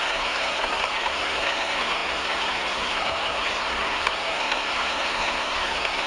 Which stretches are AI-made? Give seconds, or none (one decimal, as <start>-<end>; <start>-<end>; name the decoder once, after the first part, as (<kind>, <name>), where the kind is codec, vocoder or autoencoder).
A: 0.0-6.1 (codec, SNAC)